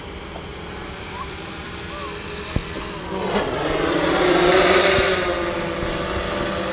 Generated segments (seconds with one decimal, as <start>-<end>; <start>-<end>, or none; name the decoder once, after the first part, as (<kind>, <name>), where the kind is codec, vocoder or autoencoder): 0.5-1.8 (vocoder, BigVGAN v2)